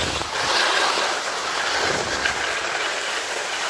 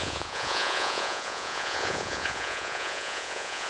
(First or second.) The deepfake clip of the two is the second